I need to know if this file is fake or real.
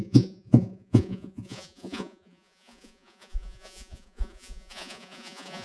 fake